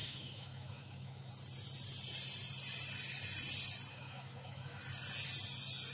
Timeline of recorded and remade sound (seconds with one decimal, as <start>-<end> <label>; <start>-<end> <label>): 0.0-1.3 remade; 1.3-3.9 recorded; 3.9-4.8 remade; 4.8-5.9 recorded